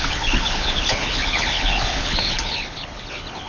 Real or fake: fake